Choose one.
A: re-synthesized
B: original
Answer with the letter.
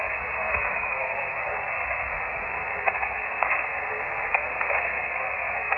A